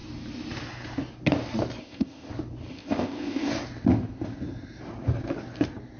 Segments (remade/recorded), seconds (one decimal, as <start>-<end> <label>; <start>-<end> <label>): 0.0-1.8 recorded; 1.8-2.3 remade; 2.3-2.7 recorded; 2.7-3.5 remade; 3.5-6.0 recorded